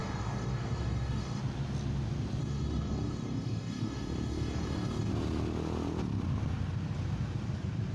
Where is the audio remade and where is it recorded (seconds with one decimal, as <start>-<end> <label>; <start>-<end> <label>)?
0.0-1.4 remade; 1.4-2.4 recorded; 2.4-5.1 remade; 5.1-7.9 recorded